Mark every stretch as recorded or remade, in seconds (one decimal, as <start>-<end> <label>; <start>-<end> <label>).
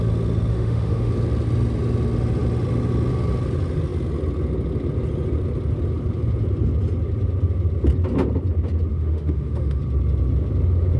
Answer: 0.0-0.5 recorded; 0.5-1.1 remade; 1.1-8.9 recorded; 8.9-9.8 remade; 9.8-11.0 recorded